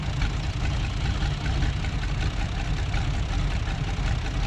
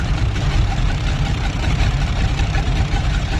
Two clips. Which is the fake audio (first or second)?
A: second